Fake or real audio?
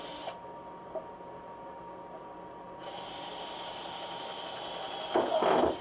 real